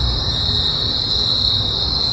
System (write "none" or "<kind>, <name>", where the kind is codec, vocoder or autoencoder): none